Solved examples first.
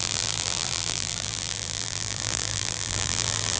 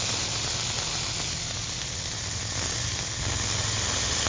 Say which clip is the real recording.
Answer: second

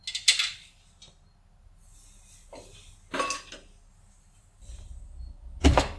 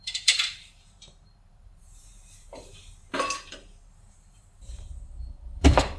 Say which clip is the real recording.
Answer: first